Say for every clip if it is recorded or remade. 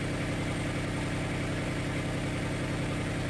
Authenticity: recorded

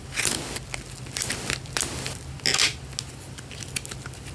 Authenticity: recorded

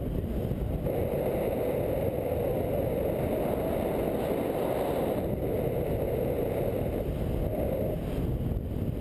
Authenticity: recorded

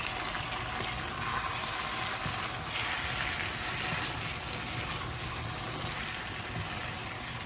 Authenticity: recorded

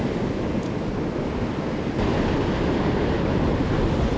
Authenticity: recorded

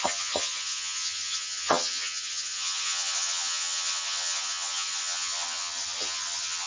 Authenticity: remade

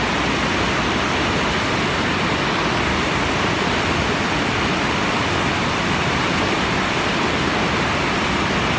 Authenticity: recorded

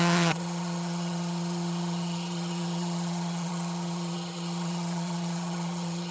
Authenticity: remade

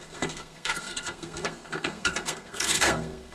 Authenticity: remade